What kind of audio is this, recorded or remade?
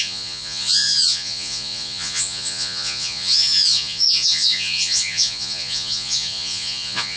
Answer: remade